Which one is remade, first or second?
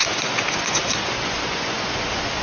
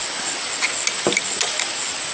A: first